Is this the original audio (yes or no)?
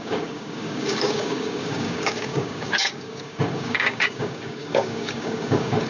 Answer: no